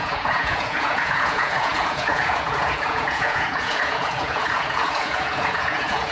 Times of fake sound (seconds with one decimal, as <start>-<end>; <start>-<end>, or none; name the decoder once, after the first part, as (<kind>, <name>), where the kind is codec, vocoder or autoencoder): 0.0-6.1 (vocoder, Vocos)